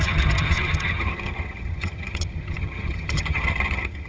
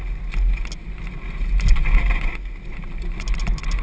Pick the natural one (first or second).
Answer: second